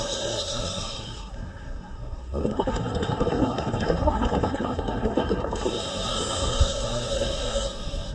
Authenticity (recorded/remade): remade